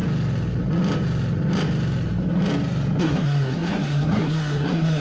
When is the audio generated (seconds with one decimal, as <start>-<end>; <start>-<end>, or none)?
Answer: 3.0-5.0